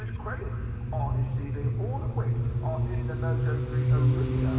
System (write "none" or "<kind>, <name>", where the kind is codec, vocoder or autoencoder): none